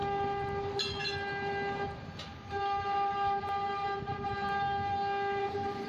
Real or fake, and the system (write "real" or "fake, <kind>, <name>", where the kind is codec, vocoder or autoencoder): real